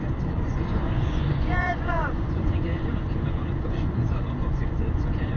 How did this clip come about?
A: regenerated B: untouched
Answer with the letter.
A